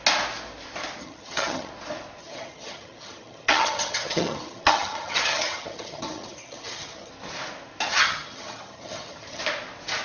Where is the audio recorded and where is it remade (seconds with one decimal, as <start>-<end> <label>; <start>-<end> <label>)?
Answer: 0.0-1.0 recorded; 1.0-1.7 remade; 1.7-2.2 recorded; 2.2-7.1 remade; 7.1-7.9 recorded; 7.9-9.4 remade; 9.4-10.0 recorded